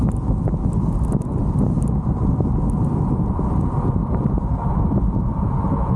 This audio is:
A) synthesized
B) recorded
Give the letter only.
B